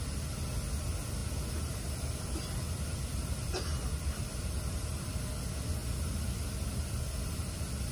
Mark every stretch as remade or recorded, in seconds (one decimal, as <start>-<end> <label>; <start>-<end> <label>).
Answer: 0.0-7.9 recorded